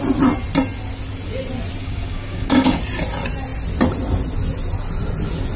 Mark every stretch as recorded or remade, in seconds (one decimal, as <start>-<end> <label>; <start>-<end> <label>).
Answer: 0.0-1.8 recorded; 1.8-2.8 remade; 2.8-5.6 recorded